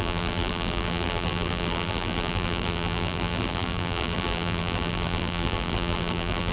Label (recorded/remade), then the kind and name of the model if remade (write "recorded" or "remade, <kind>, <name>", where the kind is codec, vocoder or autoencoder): remade, vocoder, BigVGAN v2